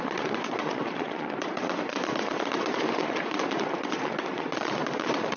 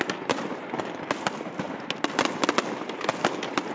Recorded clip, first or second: second